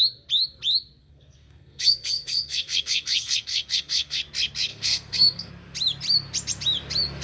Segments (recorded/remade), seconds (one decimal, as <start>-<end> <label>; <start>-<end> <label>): 0.0-1.0 recorded; 1.0-4.2 remade; 4.2-4.7 recorded; 4.7-5.5 remade; 5.5-7.2 recorded